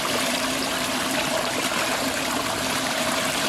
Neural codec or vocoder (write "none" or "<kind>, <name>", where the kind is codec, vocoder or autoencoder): vocoder, BigVGAN v2